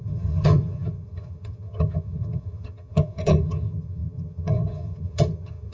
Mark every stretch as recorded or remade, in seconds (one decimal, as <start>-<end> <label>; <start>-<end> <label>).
0.0-5.7 remade